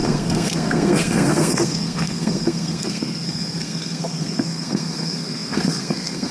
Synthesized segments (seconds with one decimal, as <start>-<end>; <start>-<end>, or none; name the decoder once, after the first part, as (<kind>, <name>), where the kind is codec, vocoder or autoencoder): 0.0-6.3 (codec, SNAC)